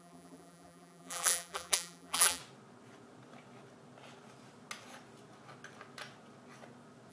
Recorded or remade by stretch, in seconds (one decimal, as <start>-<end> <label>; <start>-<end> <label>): 0.0-2.4 remade; 2.4-7.1 recorded